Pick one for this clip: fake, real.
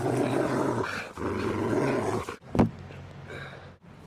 real